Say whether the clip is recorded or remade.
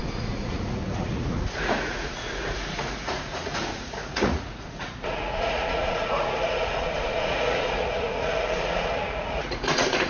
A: remade